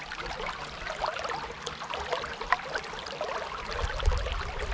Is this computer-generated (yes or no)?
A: no